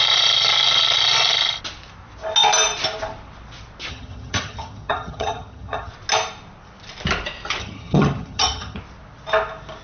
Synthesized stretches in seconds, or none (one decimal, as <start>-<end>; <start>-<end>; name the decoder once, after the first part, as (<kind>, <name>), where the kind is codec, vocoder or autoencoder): 3.9-5.9 (vocoder, HiFi-GAN); 7.6-8.8